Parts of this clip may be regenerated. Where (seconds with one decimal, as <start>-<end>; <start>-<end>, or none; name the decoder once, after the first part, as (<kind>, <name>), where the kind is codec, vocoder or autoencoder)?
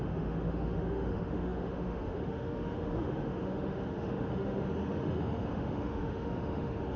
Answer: 0.0-7.0 (autoencoder, DAC-VAE)